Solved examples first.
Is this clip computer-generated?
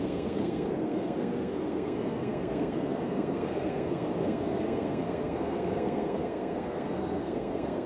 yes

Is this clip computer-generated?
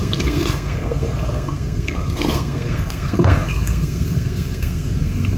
yes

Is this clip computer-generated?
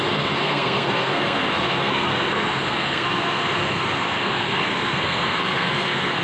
yes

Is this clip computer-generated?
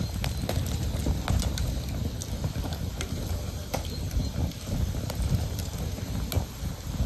no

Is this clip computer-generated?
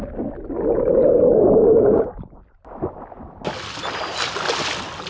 no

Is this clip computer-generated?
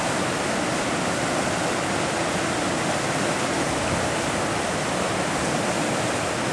no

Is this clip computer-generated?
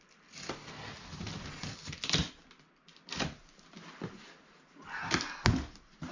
no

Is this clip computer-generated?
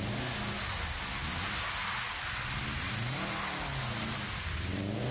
no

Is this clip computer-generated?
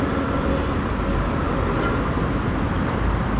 no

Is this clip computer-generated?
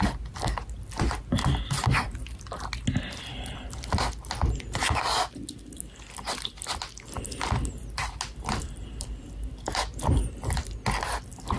no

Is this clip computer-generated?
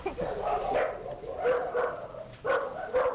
no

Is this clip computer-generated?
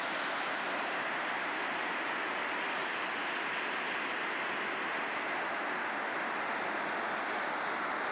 no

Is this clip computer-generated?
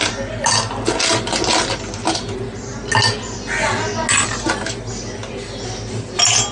no